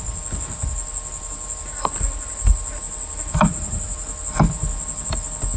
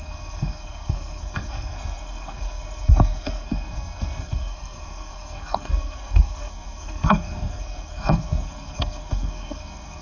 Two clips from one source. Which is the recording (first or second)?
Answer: first